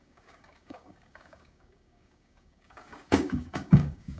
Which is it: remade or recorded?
remade